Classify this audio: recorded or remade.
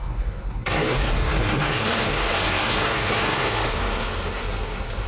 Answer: remade